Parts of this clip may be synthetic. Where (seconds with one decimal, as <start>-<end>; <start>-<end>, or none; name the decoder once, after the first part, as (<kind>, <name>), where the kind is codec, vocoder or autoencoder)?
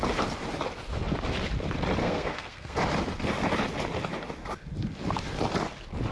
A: 2.0-2.8 (codec, SNAC)